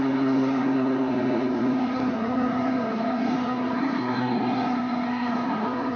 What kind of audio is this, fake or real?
fake